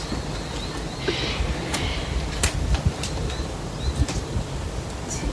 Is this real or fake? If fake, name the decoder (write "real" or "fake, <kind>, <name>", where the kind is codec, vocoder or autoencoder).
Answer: real